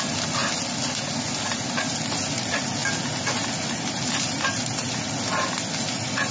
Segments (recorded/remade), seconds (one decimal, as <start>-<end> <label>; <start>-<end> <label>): 0.0-6.3 recorded